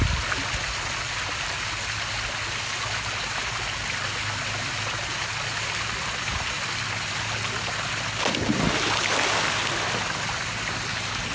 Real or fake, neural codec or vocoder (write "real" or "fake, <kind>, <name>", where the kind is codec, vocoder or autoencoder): real